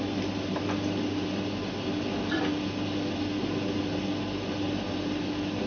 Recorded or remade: recorded